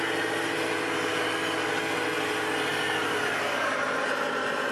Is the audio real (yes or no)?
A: yes